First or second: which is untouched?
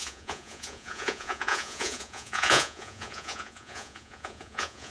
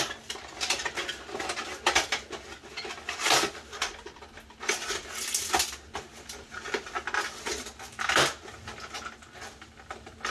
second